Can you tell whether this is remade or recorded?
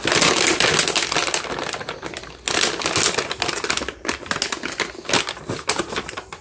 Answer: recorded